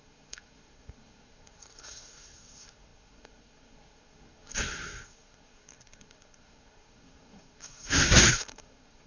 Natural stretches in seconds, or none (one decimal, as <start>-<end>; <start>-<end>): none